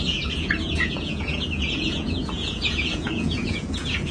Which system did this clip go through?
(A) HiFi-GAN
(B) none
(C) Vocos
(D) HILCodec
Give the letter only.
C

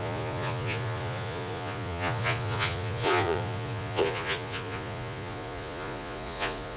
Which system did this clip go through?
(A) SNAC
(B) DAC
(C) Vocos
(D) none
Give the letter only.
C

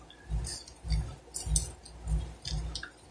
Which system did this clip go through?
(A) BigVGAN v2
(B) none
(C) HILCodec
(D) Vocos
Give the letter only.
B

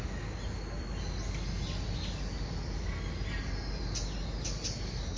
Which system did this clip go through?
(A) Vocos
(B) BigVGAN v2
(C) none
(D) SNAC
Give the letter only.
C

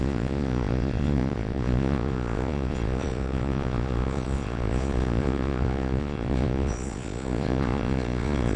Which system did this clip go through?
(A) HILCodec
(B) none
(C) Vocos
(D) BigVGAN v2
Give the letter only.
C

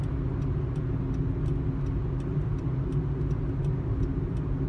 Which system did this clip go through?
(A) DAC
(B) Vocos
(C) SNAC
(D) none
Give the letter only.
D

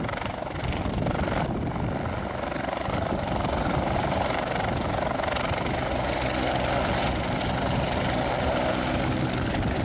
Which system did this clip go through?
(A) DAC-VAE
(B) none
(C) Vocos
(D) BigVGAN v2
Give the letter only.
B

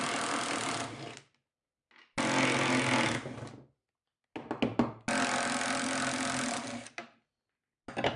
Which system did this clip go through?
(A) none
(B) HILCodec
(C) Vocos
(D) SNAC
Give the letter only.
A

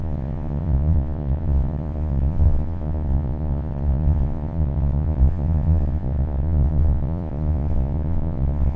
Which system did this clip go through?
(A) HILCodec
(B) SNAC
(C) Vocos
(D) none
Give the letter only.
C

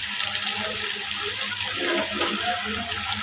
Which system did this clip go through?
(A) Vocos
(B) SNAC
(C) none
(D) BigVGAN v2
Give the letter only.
C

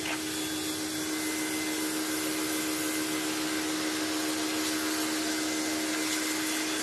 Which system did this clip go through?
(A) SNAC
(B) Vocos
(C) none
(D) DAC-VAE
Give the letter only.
C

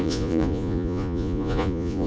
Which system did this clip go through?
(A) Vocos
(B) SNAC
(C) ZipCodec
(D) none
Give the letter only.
A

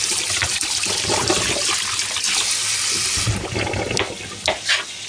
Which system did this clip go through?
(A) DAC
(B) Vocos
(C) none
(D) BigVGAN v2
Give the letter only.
C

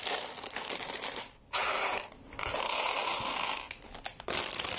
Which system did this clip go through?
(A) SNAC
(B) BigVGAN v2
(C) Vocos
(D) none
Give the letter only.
D